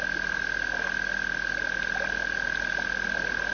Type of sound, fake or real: real